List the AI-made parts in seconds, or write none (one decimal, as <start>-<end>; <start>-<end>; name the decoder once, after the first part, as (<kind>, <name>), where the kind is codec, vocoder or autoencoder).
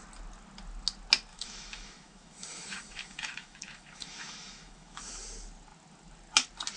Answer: 1.3-5.1 (autoencoder, DAC-VAE)